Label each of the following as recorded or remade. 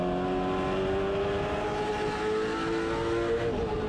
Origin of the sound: recorded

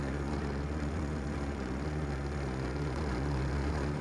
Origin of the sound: remade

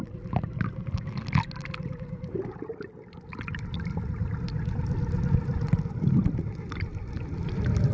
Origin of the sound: recorded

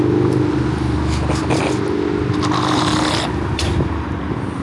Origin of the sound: recorded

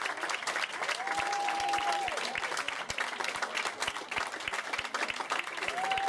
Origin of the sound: recorded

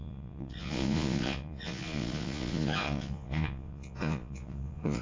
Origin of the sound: remade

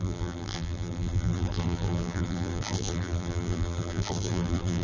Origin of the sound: remade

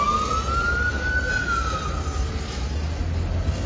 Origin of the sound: recorded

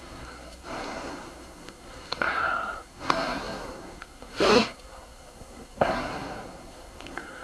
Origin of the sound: remade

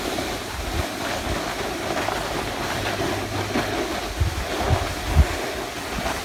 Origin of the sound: recorded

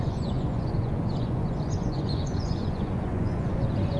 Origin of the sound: remade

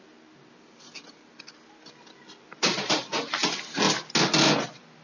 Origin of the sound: recorded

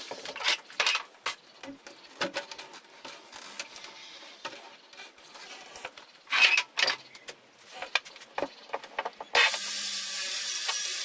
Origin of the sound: recorded